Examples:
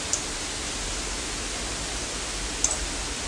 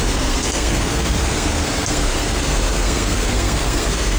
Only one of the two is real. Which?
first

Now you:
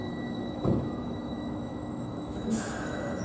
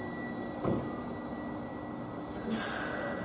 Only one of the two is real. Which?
second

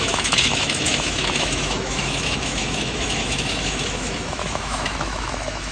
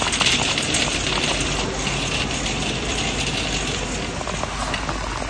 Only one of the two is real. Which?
second